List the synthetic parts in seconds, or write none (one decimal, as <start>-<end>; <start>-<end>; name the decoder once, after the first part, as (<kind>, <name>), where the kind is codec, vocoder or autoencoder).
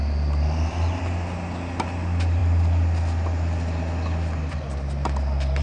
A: none